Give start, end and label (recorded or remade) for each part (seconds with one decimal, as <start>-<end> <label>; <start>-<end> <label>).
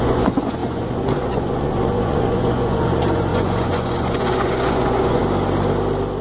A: 0.0-5.2 remade; 5.2-6.2 recorded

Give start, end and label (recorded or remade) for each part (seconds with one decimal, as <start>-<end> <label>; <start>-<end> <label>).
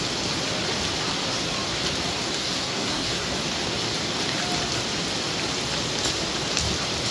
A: 0.0-2.4 recorded; 2.4-3.3 remade; 3.3-7.1 recorded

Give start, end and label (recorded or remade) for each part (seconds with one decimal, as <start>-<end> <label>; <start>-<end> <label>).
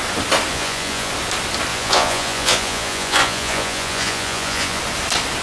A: 0.0-0.5 recorded; 0.5-1.1 remade; 1.1-1.7 recorded; 1.7-4.8 remade; 4.8-5.4 recorded